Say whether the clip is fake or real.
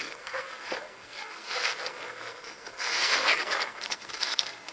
fake